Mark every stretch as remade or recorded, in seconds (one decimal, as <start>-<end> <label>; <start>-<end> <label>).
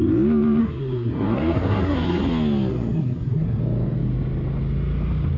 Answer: 0.0-0.6 recorded; 0.6-2.2 remade; 2.2-2.7 recorded; 2.7-3.6 remade; 3.6-5.4 recorded